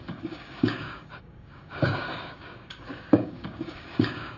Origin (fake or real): fake